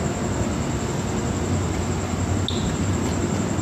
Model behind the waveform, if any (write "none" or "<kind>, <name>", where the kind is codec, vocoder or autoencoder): none